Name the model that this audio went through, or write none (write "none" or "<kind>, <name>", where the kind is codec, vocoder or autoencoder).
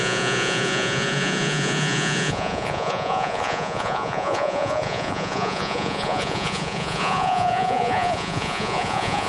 vocoder, Vocos